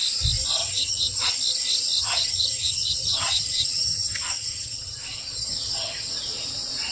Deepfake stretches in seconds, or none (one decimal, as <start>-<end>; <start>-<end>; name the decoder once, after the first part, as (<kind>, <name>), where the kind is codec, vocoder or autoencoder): 0.6-1.3 (vocoder, HiFi-GAN); 2.0-6.1